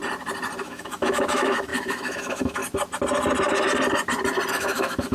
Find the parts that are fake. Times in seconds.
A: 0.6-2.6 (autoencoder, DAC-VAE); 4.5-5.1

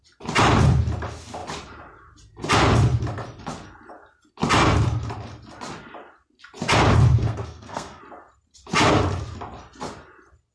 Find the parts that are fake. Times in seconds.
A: 7.2-8.0 (codec, SNAC)

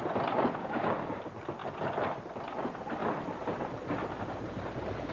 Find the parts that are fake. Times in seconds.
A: 0.6-1.2 (codec, DAC)